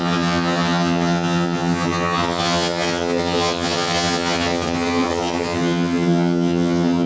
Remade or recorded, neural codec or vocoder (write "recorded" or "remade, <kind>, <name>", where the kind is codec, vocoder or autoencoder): remade, vocoder, HiFi-GAN